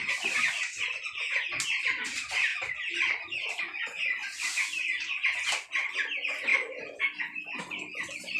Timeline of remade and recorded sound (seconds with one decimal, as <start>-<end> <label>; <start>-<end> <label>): 0.0-2.5 recorded; 2.5-3.6 remade; 3.6-8.4 recorded

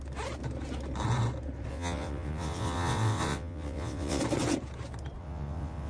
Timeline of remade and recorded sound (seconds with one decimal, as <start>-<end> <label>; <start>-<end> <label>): 0.0-1.7 recorded; 1.7-4.2 remade; 4.2-5.2 recorded; 5.2-5.9 remade